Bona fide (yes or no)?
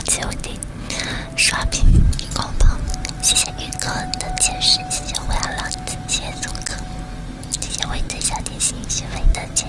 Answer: yes